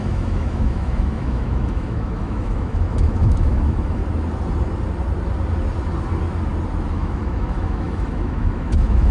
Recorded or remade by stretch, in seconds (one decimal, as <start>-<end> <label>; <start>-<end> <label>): 0.0-4.0 remade; 4.0-6.9 recorded; 6.9-9.1 remade